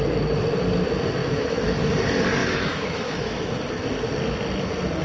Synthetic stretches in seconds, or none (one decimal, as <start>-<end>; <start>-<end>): 1.2-1.8; 2.4-3.5